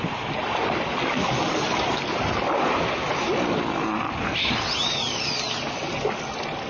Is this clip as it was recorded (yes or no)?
yes